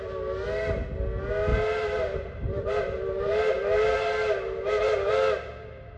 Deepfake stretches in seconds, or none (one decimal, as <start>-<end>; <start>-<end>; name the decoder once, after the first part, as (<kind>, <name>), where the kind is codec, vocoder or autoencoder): 1.5-5.1 (vocoder, BigVGAN v2)